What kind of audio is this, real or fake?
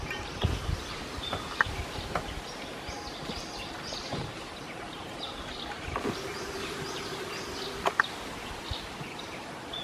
real